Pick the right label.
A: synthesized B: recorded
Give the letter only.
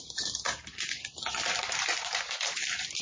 A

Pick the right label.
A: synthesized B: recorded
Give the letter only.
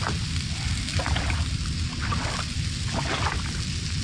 B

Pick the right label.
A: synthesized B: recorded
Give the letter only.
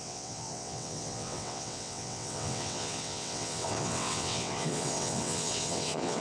A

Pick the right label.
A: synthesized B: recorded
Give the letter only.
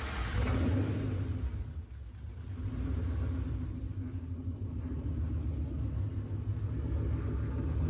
B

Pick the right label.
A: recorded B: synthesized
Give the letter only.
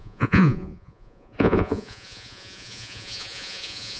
B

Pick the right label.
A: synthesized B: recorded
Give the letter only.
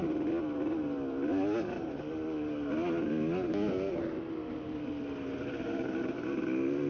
B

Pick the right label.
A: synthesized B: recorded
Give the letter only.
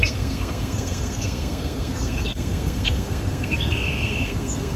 A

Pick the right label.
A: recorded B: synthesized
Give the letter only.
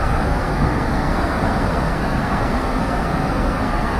B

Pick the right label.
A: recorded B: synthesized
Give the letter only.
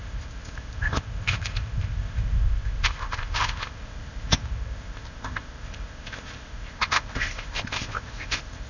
B